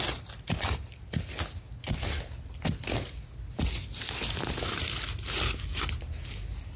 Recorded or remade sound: recorded